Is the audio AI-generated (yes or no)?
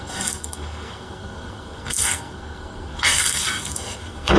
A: yes